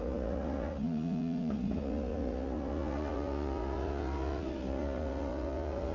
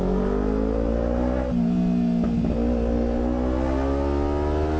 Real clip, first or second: second